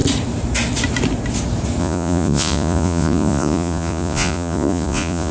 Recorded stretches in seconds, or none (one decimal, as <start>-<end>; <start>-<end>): 0.0-1.8